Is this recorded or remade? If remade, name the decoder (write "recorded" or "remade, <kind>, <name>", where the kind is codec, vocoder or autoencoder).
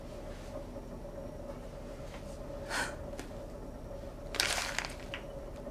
recorded